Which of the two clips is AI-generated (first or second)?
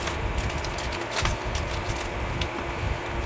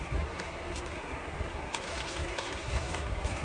second